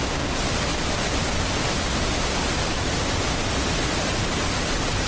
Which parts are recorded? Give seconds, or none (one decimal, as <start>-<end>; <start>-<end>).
0.7-2.5